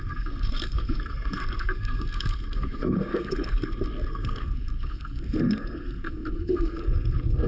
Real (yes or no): no